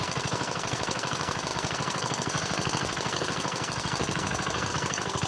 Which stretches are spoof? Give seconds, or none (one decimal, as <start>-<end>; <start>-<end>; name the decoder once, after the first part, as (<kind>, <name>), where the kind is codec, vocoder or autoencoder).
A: 0.0-5.3 (codec, SNAC)